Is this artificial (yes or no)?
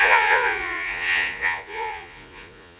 yes